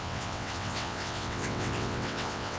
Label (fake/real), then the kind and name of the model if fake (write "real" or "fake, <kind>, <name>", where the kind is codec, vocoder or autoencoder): fake, vocoder, WaveNeXt